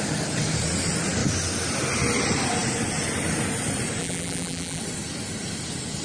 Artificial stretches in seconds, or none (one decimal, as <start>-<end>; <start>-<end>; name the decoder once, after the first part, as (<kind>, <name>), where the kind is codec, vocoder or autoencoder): 4.0-4.8 (vocoder, BigVGAN v2)